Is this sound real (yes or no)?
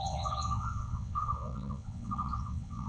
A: no